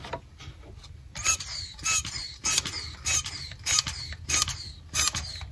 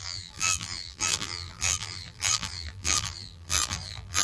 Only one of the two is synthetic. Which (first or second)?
second